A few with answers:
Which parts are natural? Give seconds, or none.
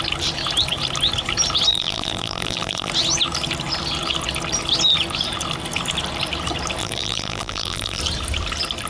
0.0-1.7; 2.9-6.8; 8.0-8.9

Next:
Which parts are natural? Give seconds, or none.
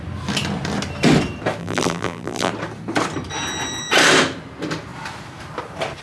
0.0-1.6; 2.5-6.0